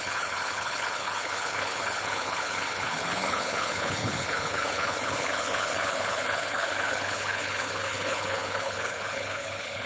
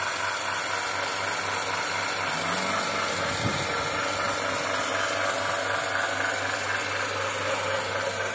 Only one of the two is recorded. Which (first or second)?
second